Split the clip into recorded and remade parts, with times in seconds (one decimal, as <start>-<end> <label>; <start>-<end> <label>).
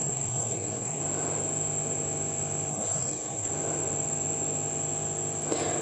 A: 0.0-1.0 remade; 1.0-2.7 recorded; 2.7-3.5 remade; 3.5-5.8 recorded